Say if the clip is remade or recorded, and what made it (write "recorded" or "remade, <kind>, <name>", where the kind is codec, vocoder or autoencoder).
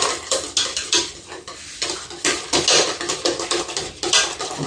recorded